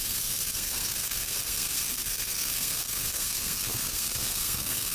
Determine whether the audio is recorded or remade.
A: remade